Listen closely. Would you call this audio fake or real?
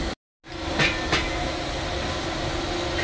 real